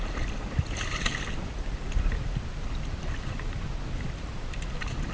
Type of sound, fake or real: real